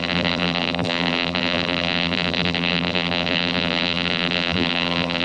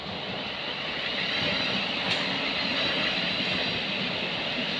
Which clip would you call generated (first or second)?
first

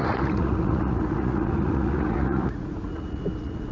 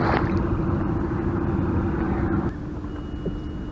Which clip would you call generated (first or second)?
first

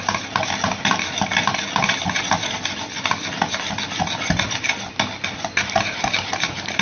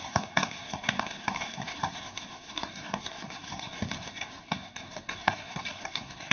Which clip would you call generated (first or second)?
second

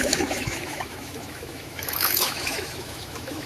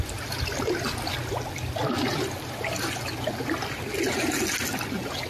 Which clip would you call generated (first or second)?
first